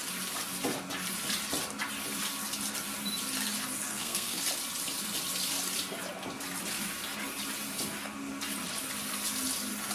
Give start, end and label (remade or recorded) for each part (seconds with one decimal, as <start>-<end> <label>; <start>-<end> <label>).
0.0-3.9 recorded; 3.9-4.4 remade; 4.4-9.9 recorded